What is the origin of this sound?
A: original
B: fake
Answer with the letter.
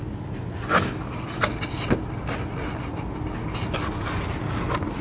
A